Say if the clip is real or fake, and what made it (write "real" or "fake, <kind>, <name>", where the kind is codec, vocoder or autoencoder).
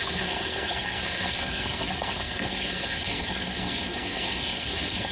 fake, codec, SNAC